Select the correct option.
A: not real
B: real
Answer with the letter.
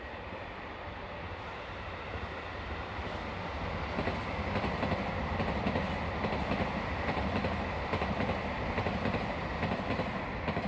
B